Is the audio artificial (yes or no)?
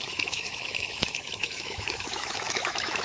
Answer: yes